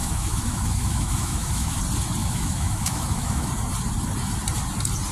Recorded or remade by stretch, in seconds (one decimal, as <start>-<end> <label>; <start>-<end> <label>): 0.0-1.8 remade; 1.8-2.2 recorded; 2.2-3.5 remade; 3.5-5.1 recorded